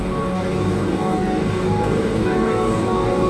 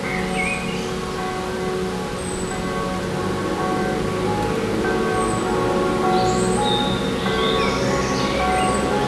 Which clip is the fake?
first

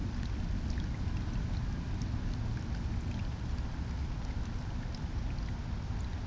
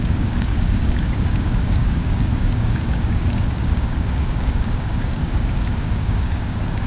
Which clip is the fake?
second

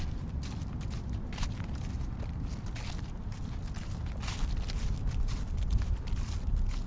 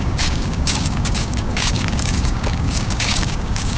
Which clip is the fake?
second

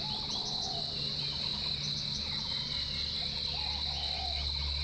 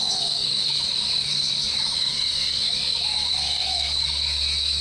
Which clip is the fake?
second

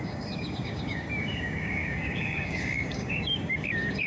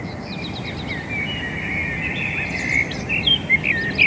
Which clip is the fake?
first